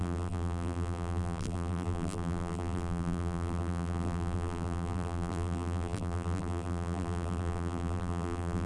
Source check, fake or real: fake